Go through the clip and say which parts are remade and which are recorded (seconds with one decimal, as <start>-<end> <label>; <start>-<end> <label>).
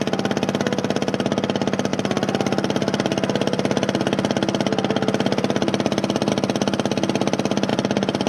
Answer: 0.0-1.9 recorded; 1.9-6.3 remade; 6.3-7.7 recorded; 7.7-8.3 remade